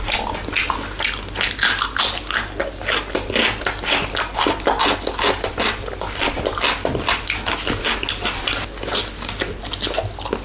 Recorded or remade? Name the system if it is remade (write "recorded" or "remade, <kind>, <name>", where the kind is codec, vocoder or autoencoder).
recorded